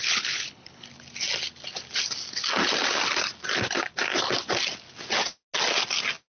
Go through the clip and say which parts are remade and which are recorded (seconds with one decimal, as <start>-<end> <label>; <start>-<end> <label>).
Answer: 0.0-0.9 remade; 0.9-6.4 recorded